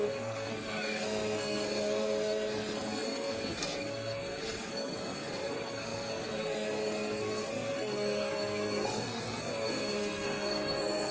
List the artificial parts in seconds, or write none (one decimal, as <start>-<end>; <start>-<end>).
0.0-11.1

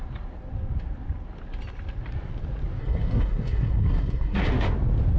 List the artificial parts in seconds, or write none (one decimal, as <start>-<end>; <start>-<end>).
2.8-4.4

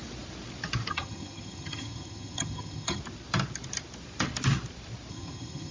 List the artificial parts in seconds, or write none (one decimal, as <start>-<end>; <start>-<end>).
0.9-3.0; 5.1-5.7